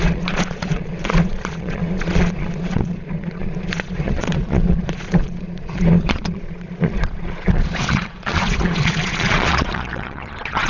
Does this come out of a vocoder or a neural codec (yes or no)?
yes